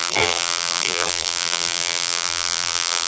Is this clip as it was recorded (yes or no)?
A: no